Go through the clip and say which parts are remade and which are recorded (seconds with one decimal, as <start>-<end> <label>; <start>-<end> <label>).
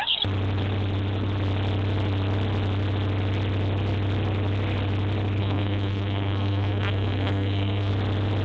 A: 0.0-5.4 recorded; 5.4-7.9 remade; 7.9-8.4 recorded